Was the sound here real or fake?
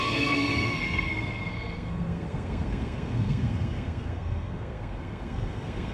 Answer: fake